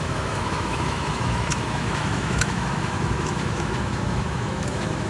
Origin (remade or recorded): remade